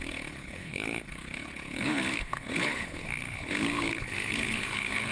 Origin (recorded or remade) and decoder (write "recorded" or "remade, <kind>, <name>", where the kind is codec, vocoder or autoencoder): remade, codec, HILCodec